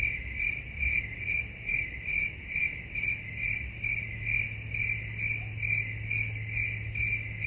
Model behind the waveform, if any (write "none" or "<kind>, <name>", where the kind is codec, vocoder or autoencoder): none